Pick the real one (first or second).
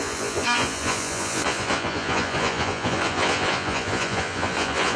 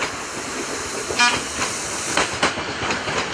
second